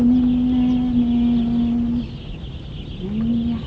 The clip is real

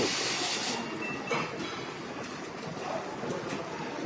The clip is real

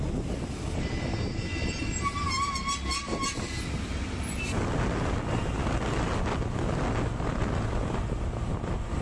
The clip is real